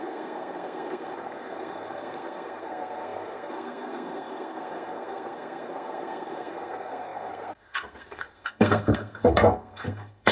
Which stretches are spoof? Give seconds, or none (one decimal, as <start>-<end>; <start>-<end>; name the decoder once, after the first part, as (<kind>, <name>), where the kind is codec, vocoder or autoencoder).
0.0-10.3 (codec, SNAC)

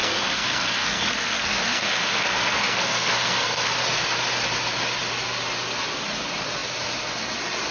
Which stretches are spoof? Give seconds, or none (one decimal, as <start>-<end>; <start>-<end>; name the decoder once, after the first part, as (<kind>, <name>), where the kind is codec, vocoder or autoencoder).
0.0-3.8 (codec, SNAC)

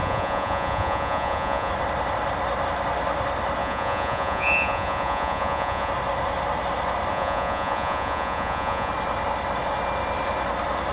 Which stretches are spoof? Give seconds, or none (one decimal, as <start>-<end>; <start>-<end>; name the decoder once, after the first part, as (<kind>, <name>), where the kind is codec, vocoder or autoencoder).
0.0-1.7 (vocoder, Vocos); 3.6-5.9; 7.1-8.9

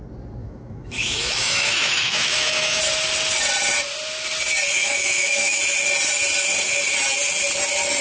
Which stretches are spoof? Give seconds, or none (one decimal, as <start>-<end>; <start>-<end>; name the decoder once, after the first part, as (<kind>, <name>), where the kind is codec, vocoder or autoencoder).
0.4-2.8 (autoencoder, DAC-VAE); 4.8-5.6

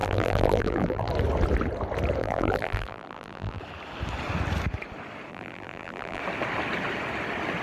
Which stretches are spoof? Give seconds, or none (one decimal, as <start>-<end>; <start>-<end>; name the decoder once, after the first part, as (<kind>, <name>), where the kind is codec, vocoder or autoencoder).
0.0-1.1 (vocoder, BigVGAN v2); 2.2-3.6; 5.3-6.2

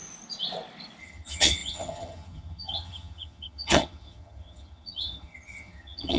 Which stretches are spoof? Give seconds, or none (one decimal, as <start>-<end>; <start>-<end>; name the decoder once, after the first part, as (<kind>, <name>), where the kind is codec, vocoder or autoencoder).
1.0-6.2 (vocoder, HiFi-GAN)

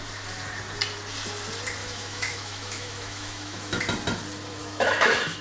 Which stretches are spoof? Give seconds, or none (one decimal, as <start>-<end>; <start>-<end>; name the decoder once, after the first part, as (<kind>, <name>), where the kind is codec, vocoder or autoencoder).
1.8-3.8 (autoencoder, DAC-VAE); 4.6-5.4

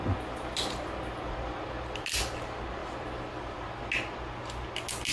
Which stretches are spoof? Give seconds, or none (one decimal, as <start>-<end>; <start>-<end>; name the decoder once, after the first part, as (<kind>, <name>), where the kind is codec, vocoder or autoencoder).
none